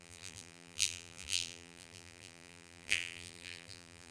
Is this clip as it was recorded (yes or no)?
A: no